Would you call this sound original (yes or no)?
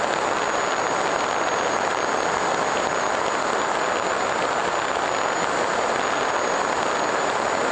yes